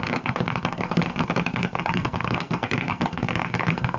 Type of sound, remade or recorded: remade